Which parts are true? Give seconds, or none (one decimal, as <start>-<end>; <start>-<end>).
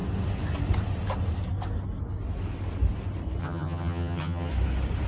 0.0-3.4; 4.5-5.1